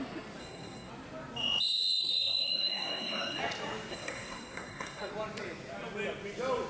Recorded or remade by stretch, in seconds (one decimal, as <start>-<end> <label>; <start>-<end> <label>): 0.0-0.4 recorded; 0.4-0.9 remade; 0.9-2.0 recorded; 2.0-3.4 remade; 3.4-3.9 recorded; 3.9-5.1 remade; 5.1-6.7 recorded